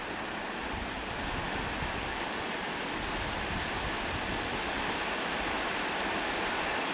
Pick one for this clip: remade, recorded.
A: recorded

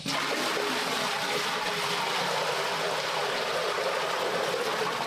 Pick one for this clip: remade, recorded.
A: recorded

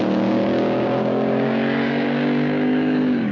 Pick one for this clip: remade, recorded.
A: remade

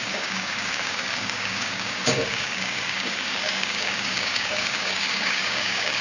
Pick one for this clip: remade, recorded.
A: remade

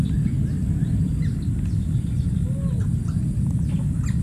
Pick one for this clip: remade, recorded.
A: recorded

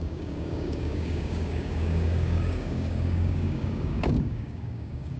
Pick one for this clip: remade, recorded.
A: remade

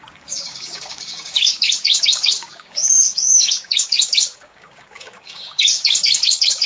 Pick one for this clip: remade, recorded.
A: remade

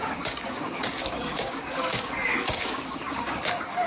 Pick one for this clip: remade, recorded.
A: remade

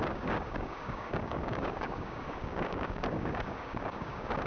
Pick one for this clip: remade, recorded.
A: remade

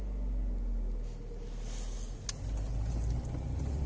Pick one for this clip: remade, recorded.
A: recorded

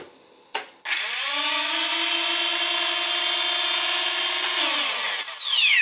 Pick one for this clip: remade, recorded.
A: recorded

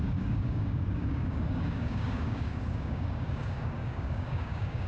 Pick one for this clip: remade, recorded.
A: remade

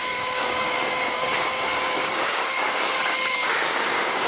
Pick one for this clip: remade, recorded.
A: remade